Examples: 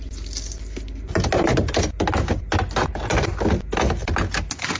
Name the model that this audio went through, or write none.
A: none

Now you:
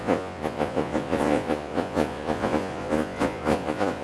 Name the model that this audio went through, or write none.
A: vocoder, Vocos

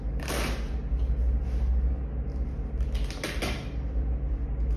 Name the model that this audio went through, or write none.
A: none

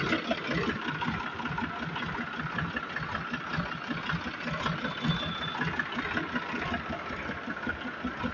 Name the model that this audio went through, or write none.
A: none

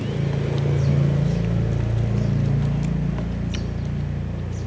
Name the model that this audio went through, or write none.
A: none